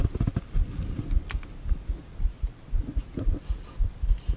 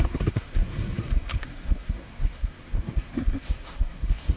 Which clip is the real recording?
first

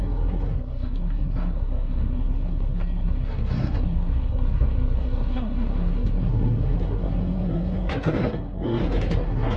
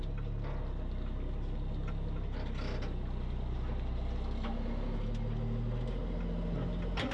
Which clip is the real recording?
second